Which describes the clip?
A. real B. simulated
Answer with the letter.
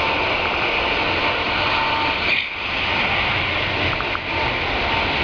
A